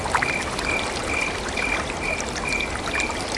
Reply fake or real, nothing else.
real